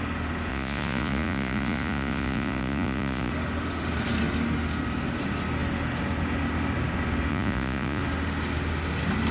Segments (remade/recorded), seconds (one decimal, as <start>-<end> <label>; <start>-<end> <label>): 0.0-0.5 recorded; 0.5-3.3 remade; 3.3-7.3 recorded; 7.3-8.0 remade; 8.0-9.3 recorded